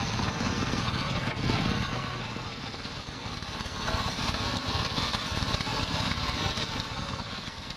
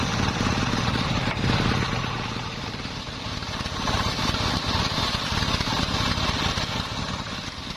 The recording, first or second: second